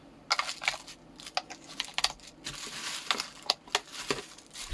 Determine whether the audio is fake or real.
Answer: real